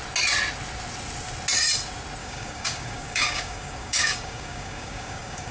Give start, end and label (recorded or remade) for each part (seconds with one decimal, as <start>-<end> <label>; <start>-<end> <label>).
0.0-2.2 recorded; 2.2-5.5 remade

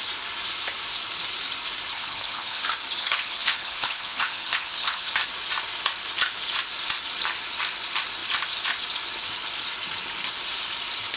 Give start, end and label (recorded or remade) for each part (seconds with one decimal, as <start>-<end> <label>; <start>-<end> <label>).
0.0-1.9 recorded; 1.9-2.6 remade; 2.6-3.0 recorded; 3.0-5.1 remade; 5.1-11.2 recorded

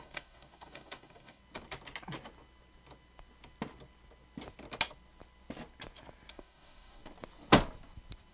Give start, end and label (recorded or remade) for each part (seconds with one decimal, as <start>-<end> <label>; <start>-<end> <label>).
0.0-1.4 remade; 1.4-6.3 recorded; 6.3-7.0 remade; 7.0-8.3 recorded

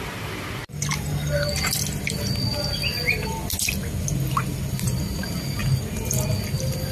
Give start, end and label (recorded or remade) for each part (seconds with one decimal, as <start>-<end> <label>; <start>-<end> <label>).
0.0-0.6 remade; 0.6-4.7 recorded; 4.7-5.6 remade; 5.6-6.4 recorded; 6.4-6.9 remade

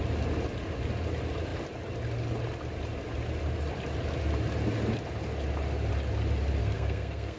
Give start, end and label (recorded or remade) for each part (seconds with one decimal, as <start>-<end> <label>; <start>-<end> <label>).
0.0-6.6 recorded; 6.6-7.4 remade